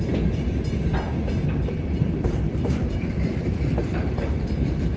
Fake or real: fake